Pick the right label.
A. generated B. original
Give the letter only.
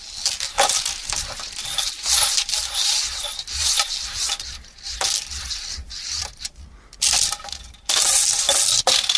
B